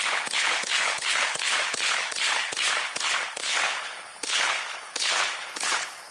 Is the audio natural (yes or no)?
no